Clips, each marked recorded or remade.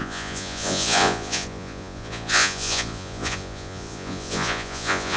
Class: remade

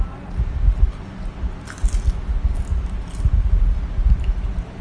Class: recorded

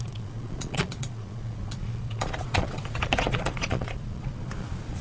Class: remade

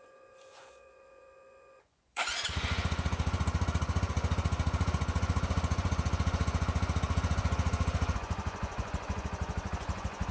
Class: remade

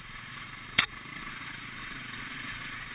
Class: remade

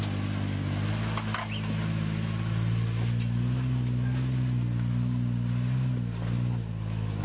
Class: recorded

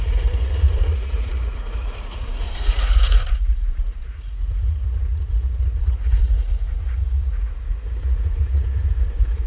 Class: remade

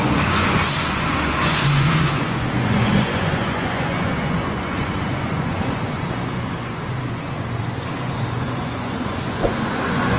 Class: remade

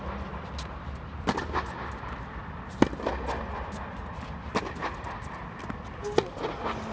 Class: recorded